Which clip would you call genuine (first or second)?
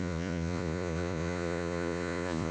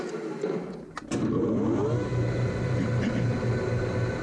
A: second